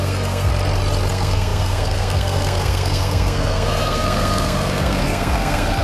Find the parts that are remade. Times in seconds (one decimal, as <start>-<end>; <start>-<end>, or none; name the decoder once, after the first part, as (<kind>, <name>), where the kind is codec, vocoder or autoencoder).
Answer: 0.0-0.5 (codec, SNAC); 1.1-5.8